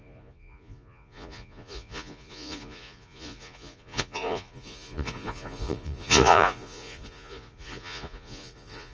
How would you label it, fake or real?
fake